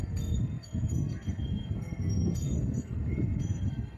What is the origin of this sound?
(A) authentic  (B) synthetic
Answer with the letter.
B